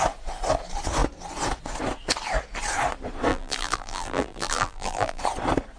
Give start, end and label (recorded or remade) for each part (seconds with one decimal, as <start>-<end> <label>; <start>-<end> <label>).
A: 0.0-3.3 recorded; 3.3-5.2 remade; 5.2-5.8 recorded